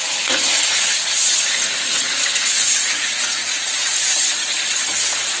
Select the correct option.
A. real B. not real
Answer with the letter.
B